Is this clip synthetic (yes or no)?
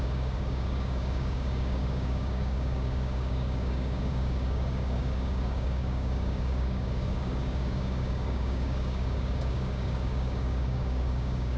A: yes